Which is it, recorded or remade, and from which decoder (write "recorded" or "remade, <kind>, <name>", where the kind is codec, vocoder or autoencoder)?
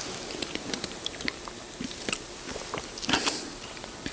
recorded